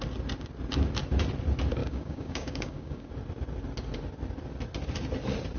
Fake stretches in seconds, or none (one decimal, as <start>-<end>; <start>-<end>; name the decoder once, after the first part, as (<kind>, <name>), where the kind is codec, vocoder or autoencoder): 1.8-3.1 (codec, DAC)